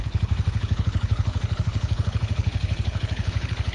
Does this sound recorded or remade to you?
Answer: remade